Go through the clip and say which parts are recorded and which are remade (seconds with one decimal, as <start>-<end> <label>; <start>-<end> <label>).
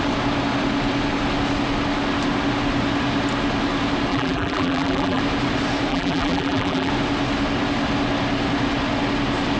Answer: 0.0-4.1 recorded; 4.1-5.2 remade; 5.2-5.9 recorded; 5.9-6.9 remade; 6.9-9.6 recorded